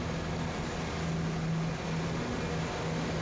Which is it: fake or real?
real